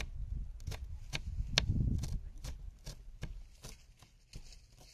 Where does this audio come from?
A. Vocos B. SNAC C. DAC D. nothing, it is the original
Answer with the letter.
D